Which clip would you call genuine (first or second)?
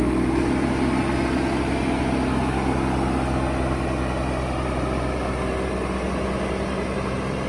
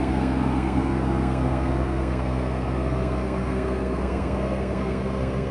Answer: first